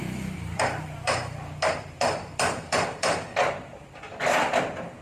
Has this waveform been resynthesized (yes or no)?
yes